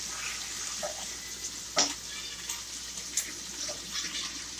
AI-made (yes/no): no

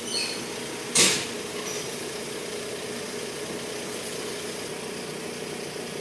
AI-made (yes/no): no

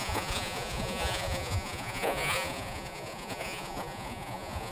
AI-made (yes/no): yes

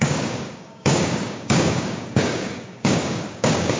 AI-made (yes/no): yes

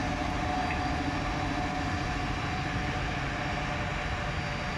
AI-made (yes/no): no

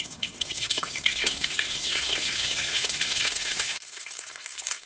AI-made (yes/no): yes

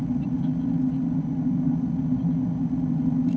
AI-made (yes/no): no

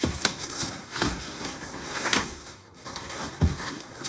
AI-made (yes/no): yes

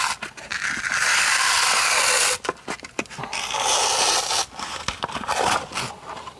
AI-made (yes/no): no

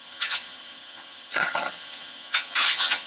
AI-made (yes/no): yes